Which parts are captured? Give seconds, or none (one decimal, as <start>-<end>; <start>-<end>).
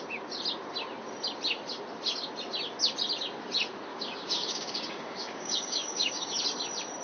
0.0-3.9; 6.4-7.0